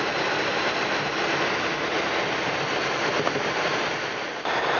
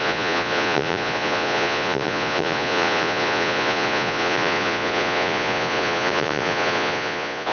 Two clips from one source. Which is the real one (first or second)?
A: first